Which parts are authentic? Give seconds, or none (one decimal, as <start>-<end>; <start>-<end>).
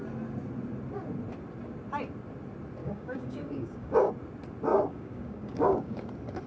0.0-2.8; 4.1-4.7; 6.0-6.5